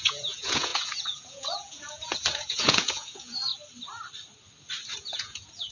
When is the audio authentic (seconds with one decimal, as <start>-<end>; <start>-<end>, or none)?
3.5-4.9